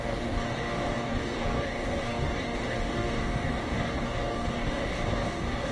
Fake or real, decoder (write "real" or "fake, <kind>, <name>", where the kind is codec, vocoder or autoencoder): fake, codec, DAC